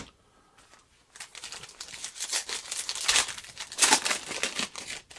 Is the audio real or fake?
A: real